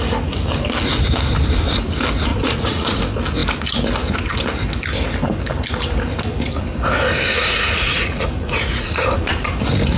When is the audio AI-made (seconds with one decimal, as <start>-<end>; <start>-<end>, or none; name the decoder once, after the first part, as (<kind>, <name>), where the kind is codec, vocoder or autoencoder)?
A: 2.3-3.0 (vocoder, Vocos); 7.3-9.3